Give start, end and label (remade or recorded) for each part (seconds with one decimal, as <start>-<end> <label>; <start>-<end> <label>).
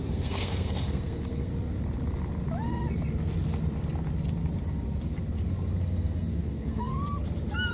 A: 0.0-1.5 remade; 1.5-5.8 recorded; 5.8-6.9 remade; 6.9-7.7 recorded